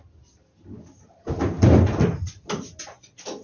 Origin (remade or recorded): recorded